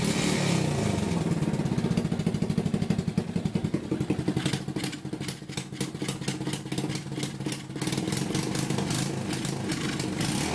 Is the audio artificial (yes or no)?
no